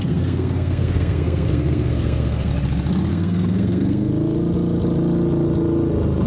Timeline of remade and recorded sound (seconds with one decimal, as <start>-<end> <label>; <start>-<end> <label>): 0.0-2.5 remade; 2.5-3.1 recorded; 3.1-4.1 remade; 4.1-6.3 recorded